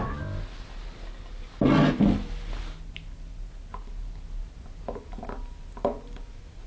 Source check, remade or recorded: recorded